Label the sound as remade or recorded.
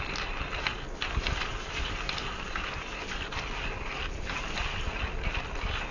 recorded